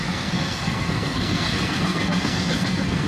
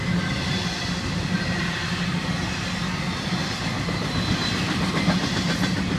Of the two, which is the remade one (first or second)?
first